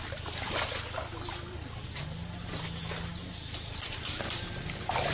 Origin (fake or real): real